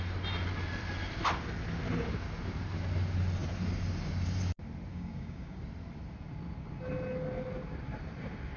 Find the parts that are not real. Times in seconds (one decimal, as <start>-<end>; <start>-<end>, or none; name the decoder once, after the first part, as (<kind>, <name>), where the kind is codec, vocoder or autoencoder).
4.9-5.6 (codec, DAC)